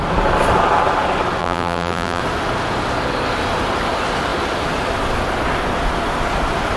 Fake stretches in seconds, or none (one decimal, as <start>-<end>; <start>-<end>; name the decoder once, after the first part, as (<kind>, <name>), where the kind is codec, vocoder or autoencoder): 1.4-2.2 (vocoder, BigVGAN v2)